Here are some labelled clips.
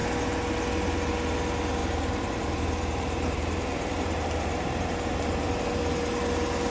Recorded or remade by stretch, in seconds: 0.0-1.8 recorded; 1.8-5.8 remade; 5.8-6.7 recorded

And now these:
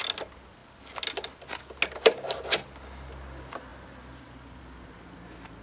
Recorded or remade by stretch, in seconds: 0.0-5.6 recorded